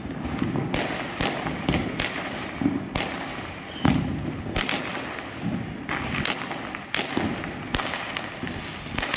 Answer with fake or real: real